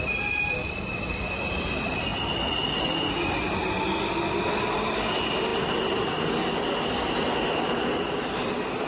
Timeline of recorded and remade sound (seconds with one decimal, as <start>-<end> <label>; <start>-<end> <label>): 0.0-8.9 recorded